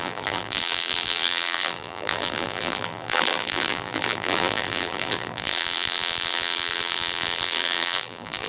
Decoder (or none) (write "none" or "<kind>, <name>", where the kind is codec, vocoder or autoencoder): vocoder, BigVGAN v2